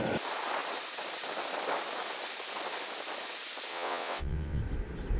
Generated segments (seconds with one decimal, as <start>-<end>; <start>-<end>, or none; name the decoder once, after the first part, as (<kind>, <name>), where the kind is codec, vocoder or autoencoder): 3.7-4.6 (vocoder, WaveNeXt)